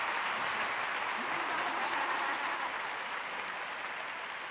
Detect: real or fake real